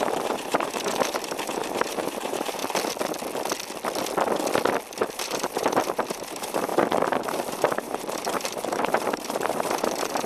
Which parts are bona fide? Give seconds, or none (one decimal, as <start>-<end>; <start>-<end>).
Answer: 2.6-5.0